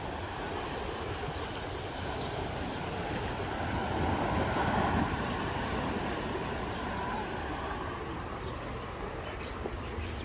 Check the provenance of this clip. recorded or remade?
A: recorded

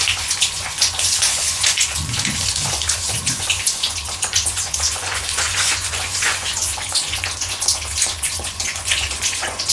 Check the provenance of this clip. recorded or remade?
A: remade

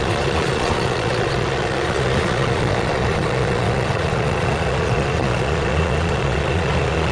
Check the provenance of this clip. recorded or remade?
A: remade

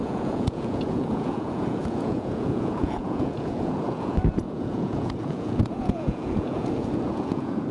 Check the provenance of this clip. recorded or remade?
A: remade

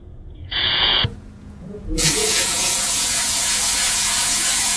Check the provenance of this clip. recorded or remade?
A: remade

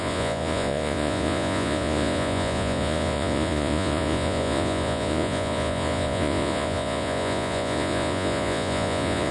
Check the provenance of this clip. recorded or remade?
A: remade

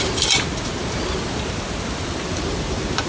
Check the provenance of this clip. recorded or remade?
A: recorded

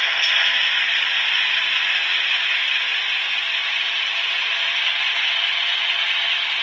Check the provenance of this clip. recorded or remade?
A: recorded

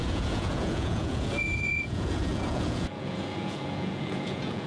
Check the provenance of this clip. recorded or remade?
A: remade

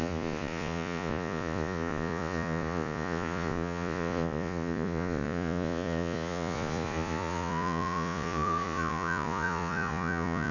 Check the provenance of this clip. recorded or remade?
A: remade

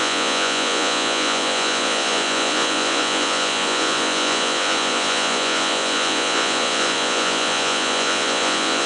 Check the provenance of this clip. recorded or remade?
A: remade